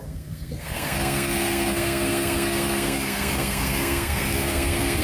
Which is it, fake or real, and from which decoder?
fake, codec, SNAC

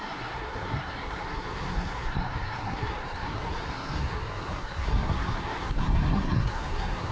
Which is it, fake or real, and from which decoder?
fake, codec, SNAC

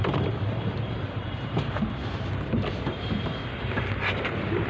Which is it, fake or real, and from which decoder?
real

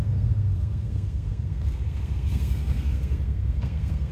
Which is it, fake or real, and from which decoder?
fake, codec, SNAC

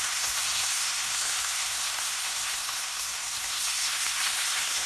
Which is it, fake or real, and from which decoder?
fake, codec, SNAC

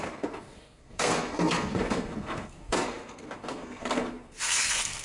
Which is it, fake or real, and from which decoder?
fake, codec, SNAC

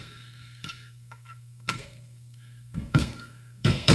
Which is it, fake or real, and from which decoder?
fake, codec, SNAC